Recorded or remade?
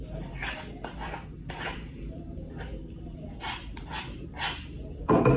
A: recorded